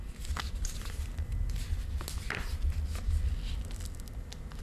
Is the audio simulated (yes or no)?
no